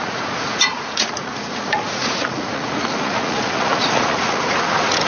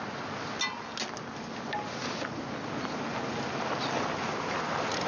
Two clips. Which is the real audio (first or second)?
second